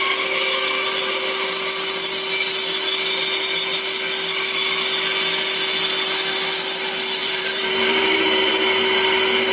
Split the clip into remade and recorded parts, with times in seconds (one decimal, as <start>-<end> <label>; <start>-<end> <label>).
0.0-7.2 recorded; 7.2-8.5 remade; 8.5-9.5 recorded

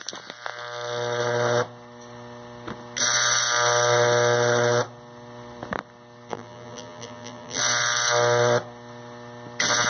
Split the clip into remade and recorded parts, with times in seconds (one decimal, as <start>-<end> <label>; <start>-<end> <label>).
0.0-6.3 recorded; 6.3-7.6 remade; 7.6-9.9 recorded

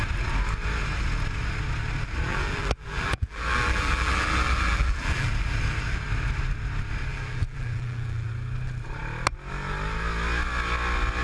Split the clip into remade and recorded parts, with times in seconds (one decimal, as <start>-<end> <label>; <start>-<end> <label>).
0.0-2.3 recorded; 2.3-5.3 remade; 5.3-7.1 recorded; 7.1-8.3 remade; 8.3-11.2 recorded

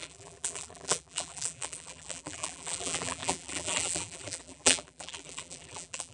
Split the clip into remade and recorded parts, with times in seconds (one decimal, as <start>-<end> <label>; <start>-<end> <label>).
0.0-6.1 remade